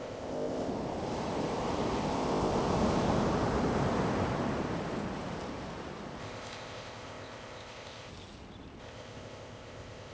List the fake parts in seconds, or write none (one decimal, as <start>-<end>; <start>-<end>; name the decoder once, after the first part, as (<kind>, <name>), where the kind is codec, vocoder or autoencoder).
0.0-0.7 (codec, ZipCodec); 2.1-2.5; 6.2-8.1; 8.8-10.1